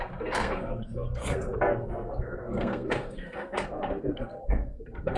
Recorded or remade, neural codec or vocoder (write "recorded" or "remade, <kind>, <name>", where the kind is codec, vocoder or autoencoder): remade, codec, SNAC